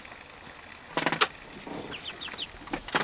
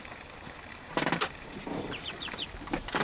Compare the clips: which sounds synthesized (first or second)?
second